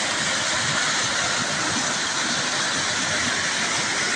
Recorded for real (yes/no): yes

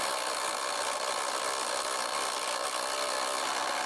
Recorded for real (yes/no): no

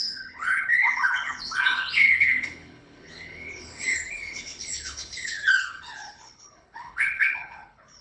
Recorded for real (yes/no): no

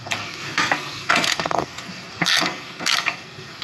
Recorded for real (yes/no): no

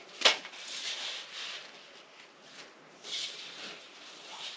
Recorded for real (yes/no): yes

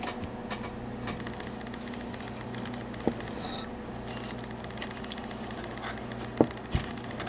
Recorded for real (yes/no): yes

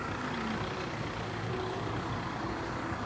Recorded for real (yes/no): no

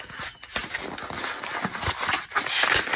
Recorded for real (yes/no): yes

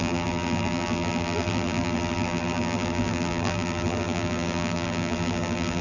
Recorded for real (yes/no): no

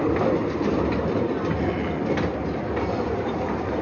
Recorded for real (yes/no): yes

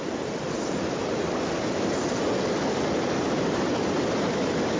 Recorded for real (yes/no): yes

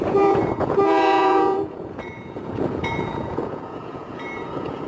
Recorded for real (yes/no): no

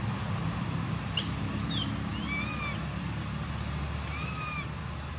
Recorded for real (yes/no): yes